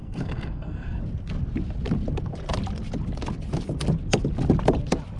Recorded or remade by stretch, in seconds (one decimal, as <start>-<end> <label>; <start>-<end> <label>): 0.0-1.0 remade; 1.0-5.2 recorded

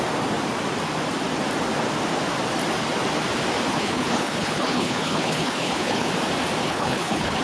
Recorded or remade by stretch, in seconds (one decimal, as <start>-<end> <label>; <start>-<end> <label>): 0.0-3.7 recorded; 3.7-6.1 remade; 6.1-6.6 recorded; 6.6-7.4 remade

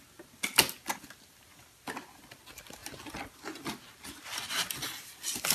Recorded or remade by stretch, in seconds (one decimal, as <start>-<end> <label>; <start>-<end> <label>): 0.0-5.5 recorded